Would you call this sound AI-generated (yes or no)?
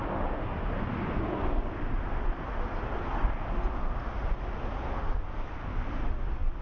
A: no